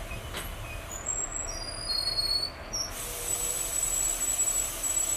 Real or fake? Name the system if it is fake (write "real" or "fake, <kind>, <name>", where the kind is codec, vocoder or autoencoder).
real